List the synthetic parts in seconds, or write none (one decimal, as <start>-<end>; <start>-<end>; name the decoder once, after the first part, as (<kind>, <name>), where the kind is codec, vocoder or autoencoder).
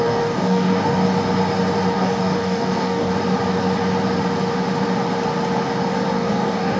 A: 0.0-1.0 (codec, DAC); 1.9-3.1; 6.1-6.8